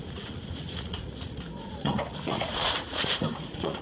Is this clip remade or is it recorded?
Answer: remade